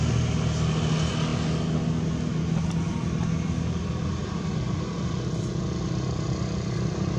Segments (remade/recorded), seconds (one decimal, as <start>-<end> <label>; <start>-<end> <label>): 0.0-7.2 recorded